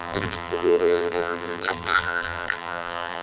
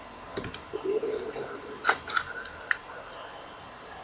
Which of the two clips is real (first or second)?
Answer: second